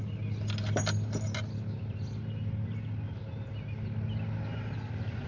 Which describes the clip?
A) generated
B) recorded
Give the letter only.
B